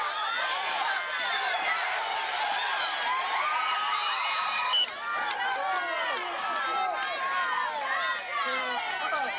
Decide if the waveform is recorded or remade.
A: recorded